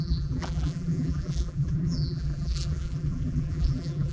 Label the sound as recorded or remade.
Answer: remade